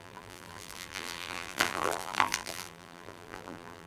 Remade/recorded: remade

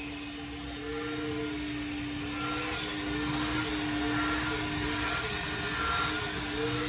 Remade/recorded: recorded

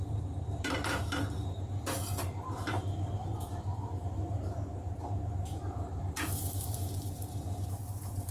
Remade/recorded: remade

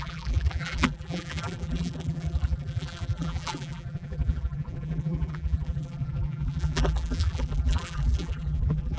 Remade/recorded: remade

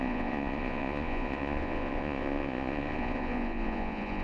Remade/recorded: remade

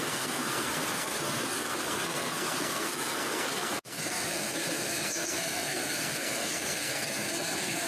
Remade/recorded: remade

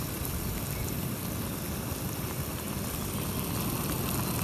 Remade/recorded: recorded